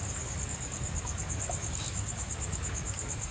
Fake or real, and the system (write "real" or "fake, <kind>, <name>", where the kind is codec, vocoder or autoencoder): fake, codec, DAC